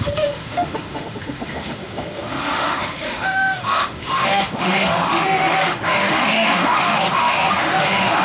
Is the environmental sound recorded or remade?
remade